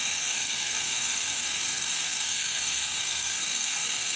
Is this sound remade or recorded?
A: remade